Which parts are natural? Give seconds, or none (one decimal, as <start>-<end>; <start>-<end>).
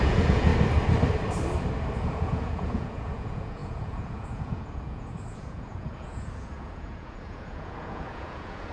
0.5-2.0